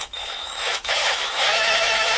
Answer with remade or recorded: remade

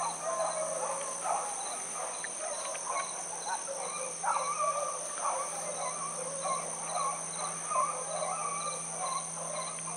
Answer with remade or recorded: recorded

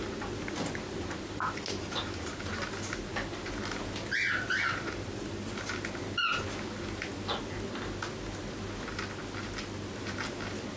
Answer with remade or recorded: recorded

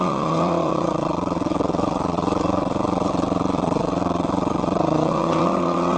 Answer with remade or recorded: remade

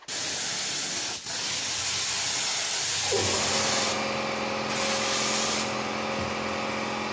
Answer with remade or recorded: recorded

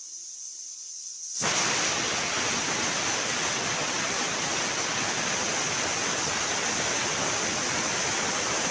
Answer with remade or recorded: recorded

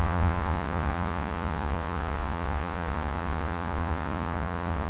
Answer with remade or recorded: remade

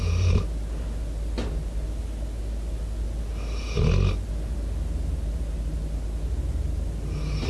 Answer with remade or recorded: recorded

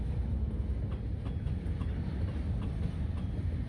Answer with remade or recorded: recorded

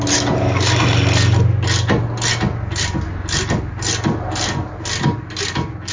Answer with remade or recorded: recorded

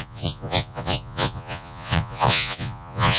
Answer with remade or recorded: remade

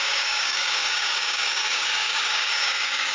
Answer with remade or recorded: remade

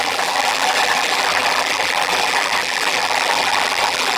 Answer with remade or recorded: remade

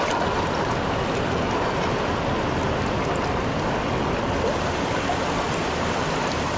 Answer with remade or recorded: recorded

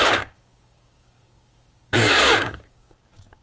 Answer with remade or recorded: remade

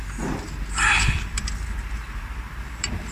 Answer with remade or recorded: remade